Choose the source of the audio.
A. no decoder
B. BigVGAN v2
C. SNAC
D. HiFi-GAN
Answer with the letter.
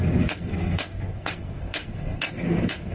C